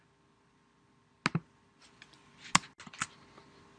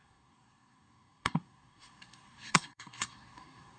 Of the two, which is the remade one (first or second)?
second